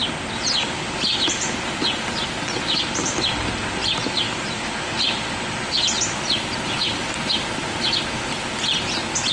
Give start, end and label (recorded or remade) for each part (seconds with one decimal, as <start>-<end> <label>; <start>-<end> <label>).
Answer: 0.0-9.3 recorded